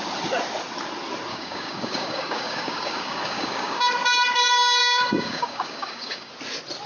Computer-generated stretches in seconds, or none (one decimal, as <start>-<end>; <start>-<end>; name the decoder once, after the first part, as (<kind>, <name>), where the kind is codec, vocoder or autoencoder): 1.3-3.9 (codec, DAC); 4.8-6.3